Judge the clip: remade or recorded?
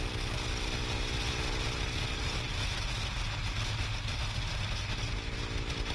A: recorded